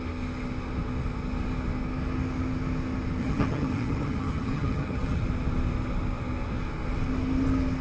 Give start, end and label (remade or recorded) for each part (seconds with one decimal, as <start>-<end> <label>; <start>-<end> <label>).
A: 0.0-3.2 recorded; 3.2-5.2 remade; 5.2-7.8 recorded